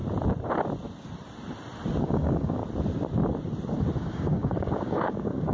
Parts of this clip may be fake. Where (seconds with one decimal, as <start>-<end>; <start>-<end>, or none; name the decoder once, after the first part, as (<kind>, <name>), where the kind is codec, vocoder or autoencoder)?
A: 2.0-2.6 (codec, DAC); 4.0-5.5

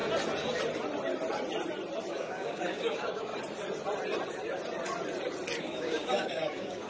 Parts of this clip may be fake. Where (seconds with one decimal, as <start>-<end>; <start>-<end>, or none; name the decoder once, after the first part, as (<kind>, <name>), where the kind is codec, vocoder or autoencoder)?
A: 2.1-3.3 (codec, DAC); 5.6-6.9

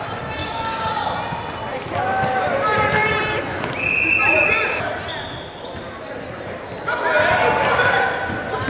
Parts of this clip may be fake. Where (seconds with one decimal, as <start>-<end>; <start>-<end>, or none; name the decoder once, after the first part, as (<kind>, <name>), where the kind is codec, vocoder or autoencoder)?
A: 0.4-0.9 (codec, DAC)